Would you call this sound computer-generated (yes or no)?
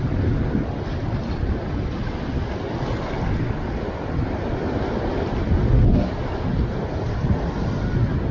no